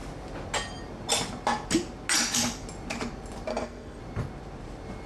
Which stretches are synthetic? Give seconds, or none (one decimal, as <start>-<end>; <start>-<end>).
3.5-4.0